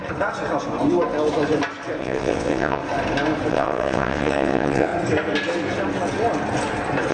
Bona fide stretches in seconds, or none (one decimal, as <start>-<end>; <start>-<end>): 0.0-2.0; 2.8-3.5; 4.9-7.1